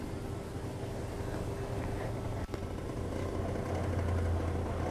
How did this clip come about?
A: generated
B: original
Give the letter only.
B